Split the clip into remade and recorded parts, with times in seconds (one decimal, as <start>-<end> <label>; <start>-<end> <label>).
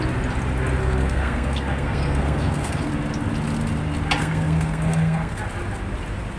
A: 0.0-0.8 recorded; 0.8-2.9 remade; 2.9-4.2 recorded; 4.2-5.4 remade; 5.4-6.4 recorded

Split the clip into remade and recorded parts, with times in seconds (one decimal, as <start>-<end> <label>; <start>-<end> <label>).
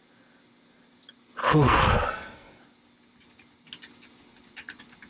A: 0.0-1.4 recorded; 1.4-2.6 remade; 2.6-5.1 recorded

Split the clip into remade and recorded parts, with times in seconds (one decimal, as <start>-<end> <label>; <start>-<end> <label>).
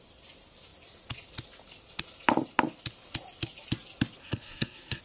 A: 0.0-4.2 recorded; 4.2-5.0 remade